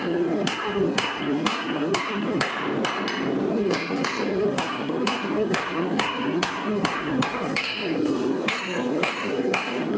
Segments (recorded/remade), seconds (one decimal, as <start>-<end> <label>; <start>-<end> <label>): 0.0-2.5 remade; 2.5-3.5 recorded; 3.5-10.0 remade